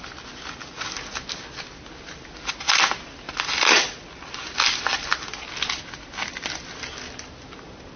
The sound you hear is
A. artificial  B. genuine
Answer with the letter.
B